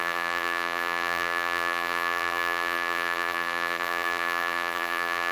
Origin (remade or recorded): remade